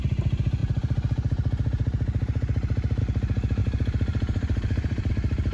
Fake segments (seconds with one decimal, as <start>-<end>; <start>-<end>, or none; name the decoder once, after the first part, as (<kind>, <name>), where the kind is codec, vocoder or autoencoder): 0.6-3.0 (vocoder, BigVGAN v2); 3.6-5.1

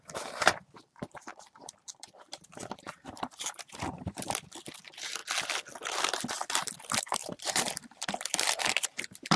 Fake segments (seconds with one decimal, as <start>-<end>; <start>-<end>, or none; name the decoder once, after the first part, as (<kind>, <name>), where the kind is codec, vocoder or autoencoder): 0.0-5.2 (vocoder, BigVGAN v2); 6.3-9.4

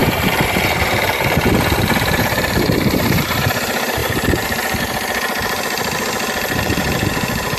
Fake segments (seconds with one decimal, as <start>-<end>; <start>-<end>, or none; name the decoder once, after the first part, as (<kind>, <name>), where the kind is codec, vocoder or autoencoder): 0.0-7.6 (vocoder, BigVGAN v2)

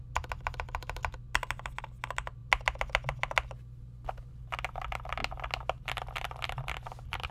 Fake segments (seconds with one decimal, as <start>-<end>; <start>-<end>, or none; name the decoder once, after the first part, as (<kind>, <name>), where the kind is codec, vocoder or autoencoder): none

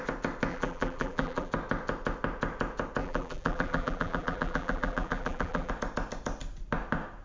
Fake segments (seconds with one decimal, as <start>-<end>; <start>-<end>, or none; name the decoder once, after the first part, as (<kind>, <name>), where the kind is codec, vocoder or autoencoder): 0.5-1.5 (vocoder, BigVGAN v2); 3.0-5.7